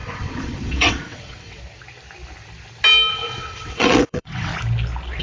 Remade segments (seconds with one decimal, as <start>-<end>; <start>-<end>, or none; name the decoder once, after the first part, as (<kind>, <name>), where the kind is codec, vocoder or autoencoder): 0.0-1.6 (vocoder, WaveNeXt); 3.1-4.5